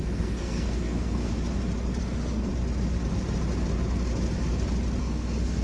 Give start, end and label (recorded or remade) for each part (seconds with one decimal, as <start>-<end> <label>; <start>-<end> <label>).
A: 0.0-1.3 remade; 1.3-2.0 recorded; 2.0-2.5 remade; 2.5-5.0 recorded; 5.0-5.6 remade